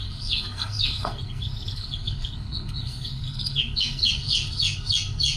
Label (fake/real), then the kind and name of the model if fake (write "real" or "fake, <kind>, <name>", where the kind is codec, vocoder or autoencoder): fake, codec, SNAC